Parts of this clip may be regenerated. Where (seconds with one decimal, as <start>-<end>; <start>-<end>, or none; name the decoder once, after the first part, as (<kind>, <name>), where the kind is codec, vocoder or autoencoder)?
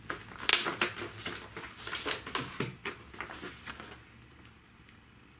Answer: none